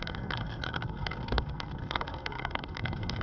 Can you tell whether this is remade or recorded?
remade